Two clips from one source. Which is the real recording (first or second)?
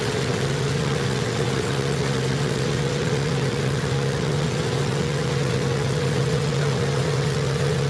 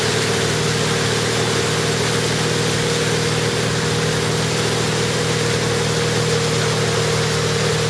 second